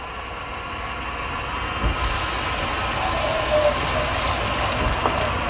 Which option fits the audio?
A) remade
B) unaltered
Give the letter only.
B